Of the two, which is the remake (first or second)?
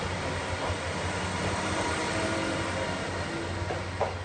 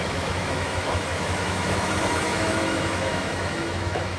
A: second